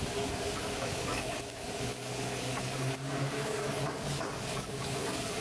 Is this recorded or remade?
remade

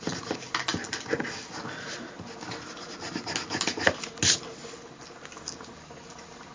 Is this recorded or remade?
recorded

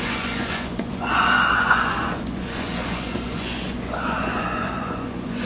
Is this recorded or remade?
remade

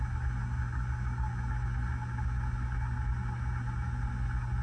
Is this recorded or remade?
recorded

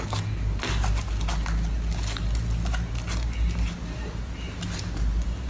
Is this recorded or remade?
recorded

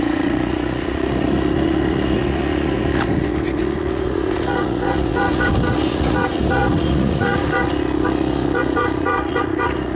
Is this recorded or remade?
remade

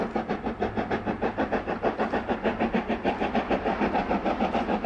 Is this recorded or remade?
recorded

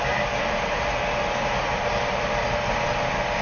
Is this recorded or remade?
recorded